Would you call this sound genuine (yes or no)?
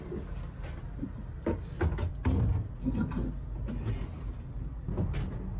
yes